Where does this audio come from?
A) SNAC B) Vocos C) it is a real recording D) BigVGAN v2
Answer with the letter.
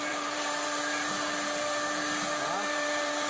D